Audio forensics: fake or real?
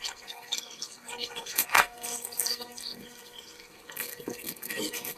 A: fake